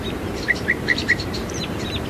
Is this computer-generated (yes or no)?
yes